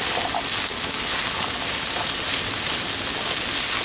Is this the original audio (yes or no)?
yes